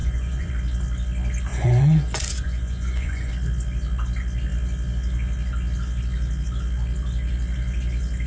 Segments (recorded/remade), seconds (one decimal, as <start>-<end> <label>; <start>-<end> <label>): 0.0-0.5 remade; 0.5-1.5 recorded; 1.5-3.3 remade; 3.3-8.3 recorded